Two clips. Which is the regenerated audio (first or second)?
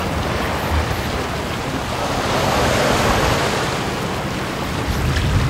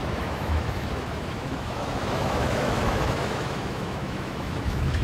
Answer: second